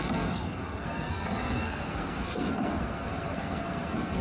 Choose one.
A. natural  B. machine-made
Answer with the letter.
B